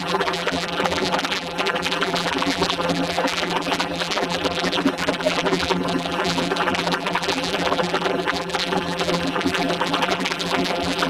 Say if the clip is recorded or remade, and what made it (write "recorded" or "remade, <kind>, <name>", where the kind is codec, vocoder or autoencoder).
remade, vocoder, BigVGAN v2